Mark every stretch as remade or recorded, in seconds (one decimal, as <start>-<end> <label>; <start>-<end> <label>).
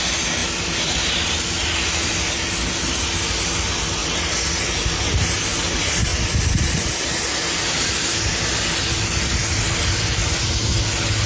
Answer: 0.0-0.4 recorded; 0.4-1.0 remade; 1.0-6.1 recorded; 6.1-8.4 remade; 8.4-11.3 recorded